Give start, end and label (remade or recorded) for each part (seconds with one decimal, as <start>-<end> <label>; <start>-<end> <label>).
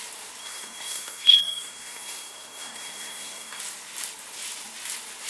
0.0-0.4 recorded; 0.4-3.6 remade; 3.6-5.3 recorded